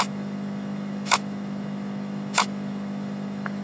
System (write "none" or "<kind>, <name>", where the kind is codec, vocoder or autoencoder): autoencoder, DAC-VAE